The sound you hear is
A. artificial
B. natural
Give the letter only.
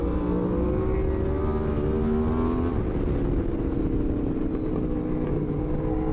B